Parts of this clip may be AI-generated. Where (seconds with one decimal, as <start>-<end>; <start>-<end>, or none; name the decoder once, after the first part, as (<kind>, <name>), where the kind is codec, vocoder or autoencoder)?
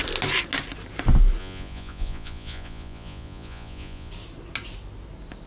1.4-4.1 (vocoder, Vocos)